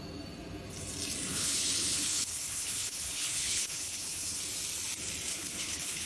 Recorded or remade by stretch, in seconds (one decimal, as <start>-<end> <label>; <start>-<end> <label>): 0.0-1.3 recorded; 1.3-4.4 remade; 4.4-5.3 recorded; 5.3-6.1 remade